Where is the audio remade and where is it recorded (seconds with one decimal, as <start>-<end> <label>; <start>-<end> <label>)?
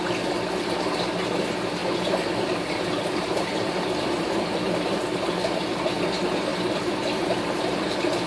0.0-1.8 recorded; 1.8-5.2 remade; 5.2-6.5 recorded; 6.5-7.9 remade; 7.9-8.3 recorded